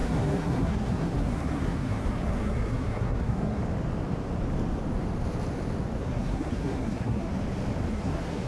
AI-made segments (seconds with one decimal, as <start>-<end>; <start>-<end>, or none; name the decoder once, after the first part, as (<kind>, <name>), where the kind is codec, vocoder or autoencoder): 0.0-3.6 (codec, SNAC); 6.0-7.3; 7.9-8.5